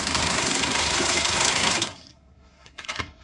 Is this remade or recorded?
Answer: remade